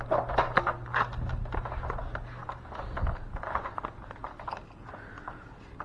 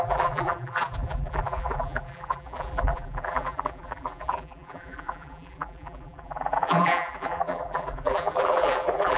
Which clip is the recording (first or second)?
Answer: first